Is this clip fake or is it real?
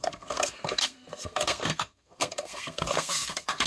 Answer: fake